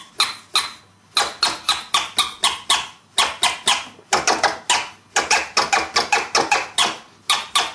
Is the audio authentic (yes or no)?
yes